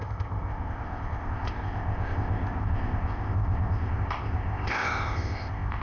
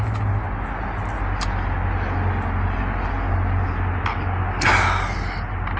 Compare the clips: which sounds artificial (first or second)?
first